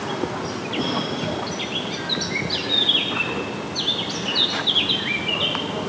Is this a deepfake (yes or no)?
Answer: no